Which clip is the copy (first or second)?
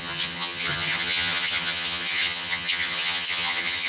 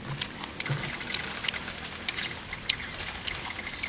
first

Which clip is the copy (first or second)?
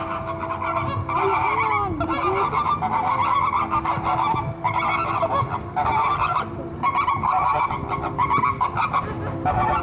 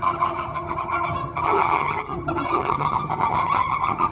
second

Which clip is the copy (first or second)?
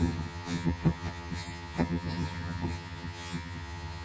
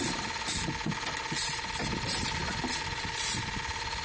first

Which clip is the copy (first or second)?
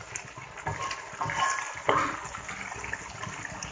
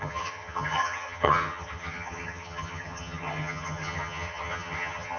second